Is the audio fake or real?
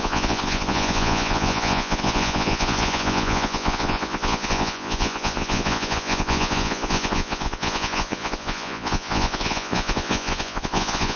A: fake